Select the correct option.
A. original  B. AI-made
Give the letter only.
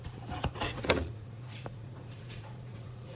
B